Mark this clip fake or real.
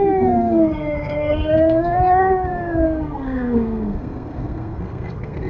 fake